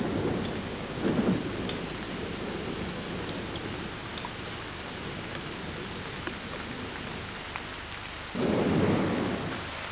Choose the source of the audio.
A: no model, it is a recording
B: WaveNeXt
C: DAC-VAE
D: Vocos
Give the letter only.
A